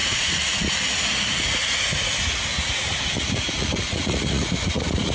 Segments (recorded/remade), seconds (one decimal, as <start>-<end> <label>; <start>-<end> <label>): 0.0-0.7 remade; 0.7-2.5 recorded; 2.5-5.1 remade